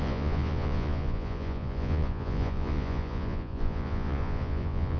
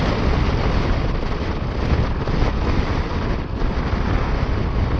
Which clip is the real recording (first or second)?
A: second